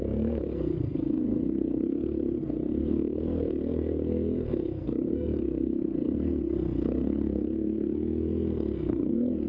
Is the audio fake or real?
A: fake